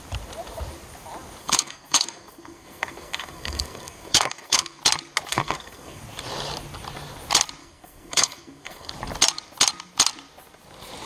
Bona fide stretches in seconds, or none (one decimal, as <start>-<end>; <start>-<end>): 0.0-1.4; 4.8-5.3; 6.0-7.6; 8.9-11.1